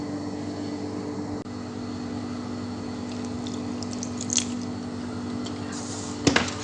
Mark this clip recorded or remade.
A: recorded